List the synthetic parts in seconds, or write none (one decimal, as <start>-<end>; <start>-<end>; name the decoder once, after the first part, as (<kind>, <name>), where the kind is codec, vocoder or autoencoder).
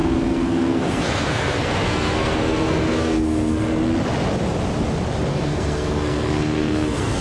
0.0-3.8 (codec, SNAC); 5.3-7.2